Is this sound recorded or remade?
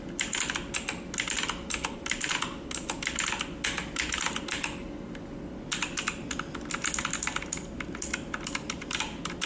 recorded